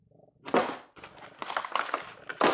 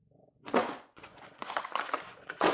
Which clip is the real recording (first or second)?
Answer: first